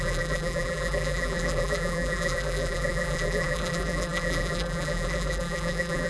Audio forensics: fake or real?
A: fake